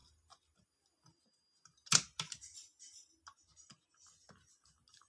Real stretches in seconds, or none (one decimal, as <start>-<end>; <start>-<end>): 0.0-5.1